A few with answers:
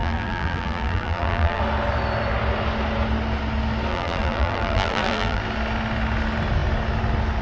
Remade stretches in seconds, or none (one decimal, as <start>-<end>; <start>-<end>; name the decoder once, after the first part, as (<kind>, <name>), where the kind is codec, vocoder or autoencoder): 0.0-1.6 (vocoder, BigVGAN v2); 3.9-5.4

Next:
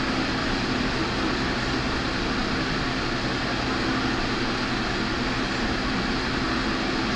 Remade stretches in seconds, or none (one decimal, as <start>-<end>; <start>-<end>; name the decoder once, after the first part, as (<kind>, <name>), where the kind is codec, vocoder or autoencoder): 0.4-1.0 (vocoder, BigVGAN v2)

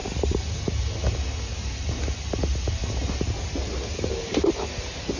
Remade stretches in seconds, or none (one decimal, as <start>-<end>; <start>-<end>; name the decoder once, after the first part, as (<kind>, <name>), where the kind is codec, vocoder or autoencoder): none

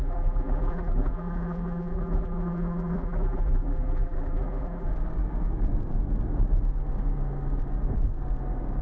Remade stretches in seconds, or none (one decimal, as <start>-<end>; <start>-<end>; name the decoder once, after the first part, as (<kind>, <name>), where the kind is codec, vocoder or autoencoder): 0.0-4.9 (vocoder, BigVGAN v2)